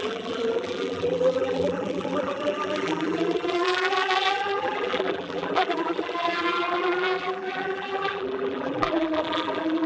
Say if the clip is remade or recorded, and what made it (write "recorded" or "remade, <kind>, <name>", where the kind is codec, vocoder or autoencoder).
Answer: remade, vocoder, BigVGAN v2